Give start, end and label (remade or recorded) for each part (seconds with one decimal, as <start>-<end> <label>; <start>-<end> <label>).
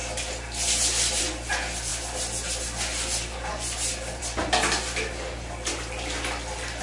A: 0.0-6.8 recorded